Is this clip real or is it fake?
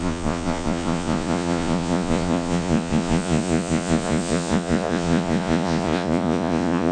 fake